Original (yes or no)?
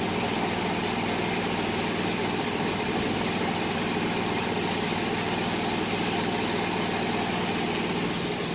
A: yes